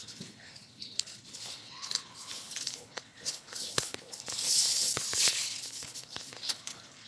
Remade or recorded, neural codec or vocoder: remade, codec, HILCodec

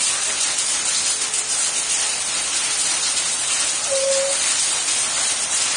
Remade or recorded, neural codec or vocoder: recorded